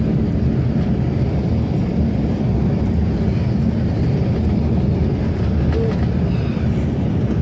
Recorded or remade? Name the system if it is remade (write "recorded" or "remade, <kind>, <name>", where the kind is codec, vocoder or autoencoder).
recorded